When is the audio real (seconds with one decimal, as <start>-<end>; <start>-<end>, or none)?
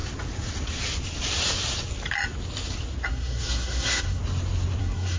0.0-3.1; 4.2-4.8